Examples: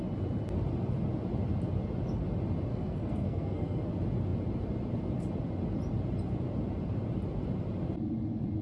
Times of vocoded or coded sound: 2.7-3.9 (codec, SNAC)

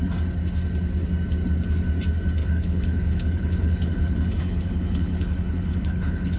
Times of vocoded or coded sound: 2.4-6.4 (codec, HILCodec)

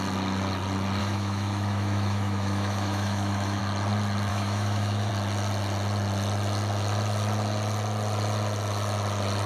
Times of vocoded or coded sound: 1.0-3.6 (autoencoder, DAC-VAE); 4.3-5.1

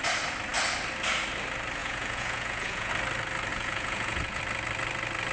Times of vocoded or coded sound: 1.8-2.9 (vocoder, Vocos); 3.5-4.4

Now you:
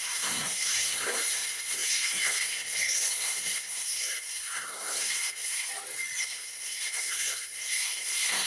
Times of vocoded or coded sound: 0.0-5.7 (codec, SNAC); 6.2-8.5